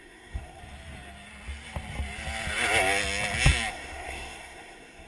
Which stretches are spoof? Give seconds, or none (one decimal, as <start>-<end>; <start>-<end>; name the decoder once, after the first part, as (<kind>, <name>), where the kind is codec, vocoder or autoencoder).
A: 0.0-0.6 (codec, SNAC); 3.7-5.1